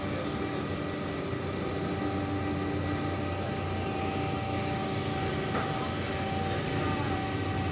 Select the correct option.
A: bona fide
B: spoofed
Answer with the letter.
A